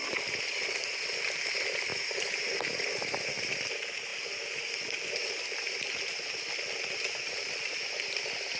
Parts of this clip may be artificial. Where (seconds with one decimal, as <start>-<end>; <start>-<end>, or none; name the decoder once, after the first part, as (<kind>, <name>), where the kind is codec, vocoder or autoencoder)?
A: none